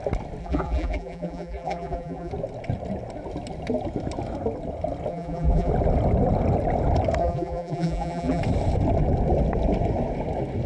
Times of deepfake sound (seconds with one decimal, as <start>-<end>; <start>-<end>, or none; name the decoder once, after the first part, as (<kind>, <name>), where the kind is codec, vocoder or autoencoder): 0.4-2.3 (vocoder, BigVGAN v2); 5.1-5.7; 7.2-8.4